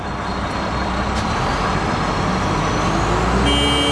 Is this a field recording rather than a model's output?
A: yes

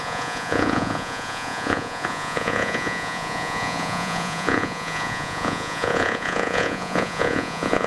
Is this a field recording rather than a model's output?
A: no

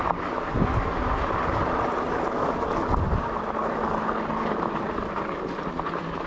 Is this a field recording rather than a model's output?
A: yes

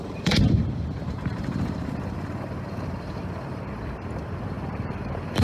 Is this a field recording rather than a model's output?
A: no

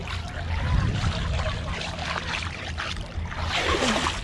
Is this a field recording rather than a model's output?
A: yes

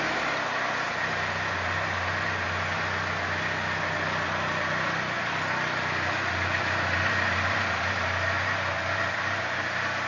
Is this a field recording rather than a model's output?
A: yes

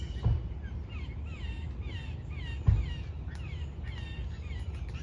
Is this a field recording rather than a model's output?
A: yes